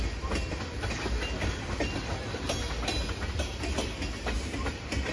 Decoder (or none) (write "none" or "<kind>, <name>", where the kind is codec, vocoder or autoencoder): none